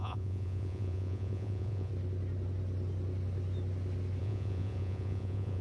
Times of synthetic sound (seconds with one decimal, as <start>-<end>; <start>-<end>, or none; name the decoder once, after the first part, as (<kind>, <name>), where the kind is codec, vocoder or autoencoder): 0.0-1.9 (vocoder, Vocos); 4.2-5.6